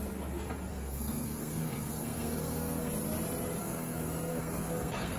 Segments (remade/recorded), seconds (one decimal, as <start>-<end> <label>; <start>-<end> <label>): 0.0-0.7 recorded; 0.7-2.9 remade; 2.9-3.6 recorded; 3.6-5.2 remade